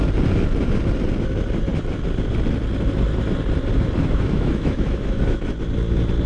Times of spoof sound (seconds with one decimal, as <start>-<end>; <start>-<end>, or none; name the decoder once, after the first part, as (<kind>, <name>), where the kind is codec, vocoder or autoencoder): 4.0-5.4 (autoencoder, DAC-VAE)